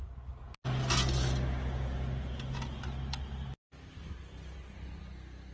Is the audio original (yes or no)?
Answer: yes